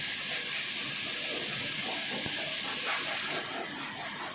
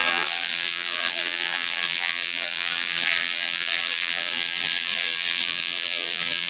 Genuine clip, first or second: first